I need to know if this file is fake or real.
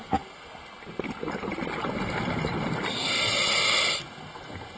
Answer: real